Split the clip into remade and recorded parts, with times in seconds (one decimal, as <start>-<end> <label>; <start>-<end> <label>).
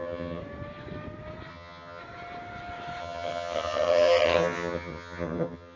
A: 0.0-0.4 remade; 0.4-1.5 recorded; 1.5-2.0 remade; 2.0-3.0 recorded; 3.0-5.8 remade